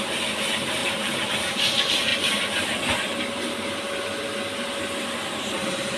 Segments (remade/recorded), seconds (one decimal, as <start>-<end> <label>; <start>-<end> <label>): 0.0-0.8 recorded; 0.8-1.3 remade; 1.3-6.0 recorded